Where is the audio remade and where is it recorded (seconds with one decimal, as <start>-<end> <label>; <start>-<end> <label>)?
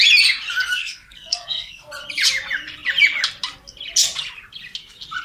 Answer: 0.0-0.7 recorded; 0.7-1.9 remade; 1.9-5.2 recorded